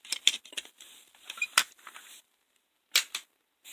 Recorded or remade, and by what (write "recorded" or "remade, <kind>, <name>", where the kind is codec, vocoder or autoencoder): recorded